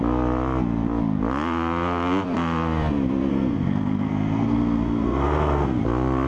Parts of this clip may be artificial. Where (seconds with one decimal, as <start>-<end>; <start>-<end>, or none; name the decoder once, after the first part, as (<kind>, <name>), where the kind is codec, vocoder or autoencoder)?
3.3-5.8 (codec, SNAC)